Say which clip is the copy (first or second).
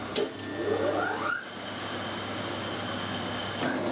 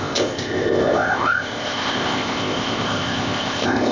second